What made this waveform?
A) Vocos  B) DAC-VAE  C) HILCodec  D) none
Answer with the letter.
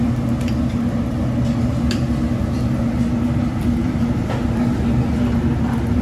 D